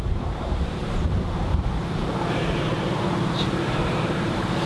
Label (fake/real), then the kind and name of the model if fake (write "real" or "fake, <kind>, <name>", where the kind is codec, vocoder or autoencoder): fake, vocoder, BigVGAN v2